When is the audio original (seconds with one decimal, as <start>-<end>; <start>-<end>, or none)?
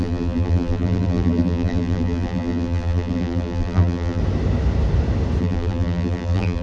4.2-5.4